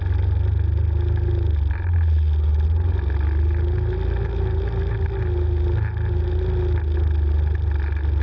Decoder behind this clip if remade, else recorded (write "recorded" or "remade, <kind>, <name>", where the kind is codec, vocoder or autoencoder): recorded